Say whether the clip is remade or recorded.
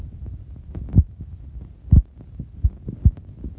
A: recorded